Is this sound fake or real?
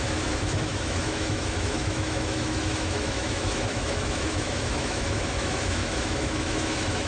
fake